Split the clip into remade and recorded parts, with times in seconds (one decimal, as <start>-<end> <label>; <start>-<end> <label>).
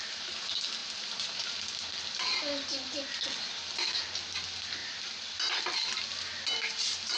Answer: 0.0-7.2 recorded